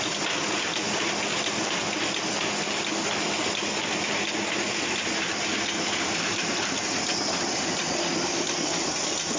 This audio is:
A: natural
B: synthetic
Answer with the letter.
A